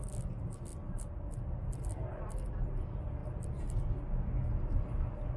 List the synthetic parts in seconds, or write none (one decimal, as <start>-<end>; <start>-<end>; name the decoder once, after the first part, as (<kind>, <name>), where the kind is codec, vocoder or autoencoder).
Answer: none